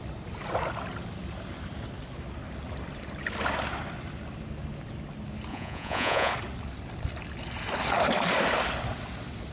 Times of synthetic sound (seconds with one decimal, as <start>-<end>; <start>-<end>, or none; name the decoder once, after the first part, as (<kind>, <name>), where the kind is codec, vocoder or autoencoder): 5.5-6.3 (vocoder, Vocos)